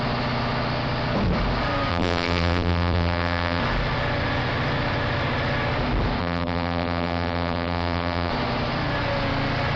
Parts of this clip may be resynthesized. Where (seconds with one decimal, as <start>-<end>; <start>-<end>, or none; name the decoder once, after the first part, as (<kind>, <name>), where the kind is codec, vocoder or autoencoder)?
1.9-3.6 (vocoder, BigVGAN v2); 6.2-8.3